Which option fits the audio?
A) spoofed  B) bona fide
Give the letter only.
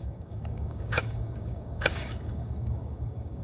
A